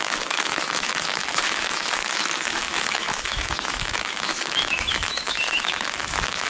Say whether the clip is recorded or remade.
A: remade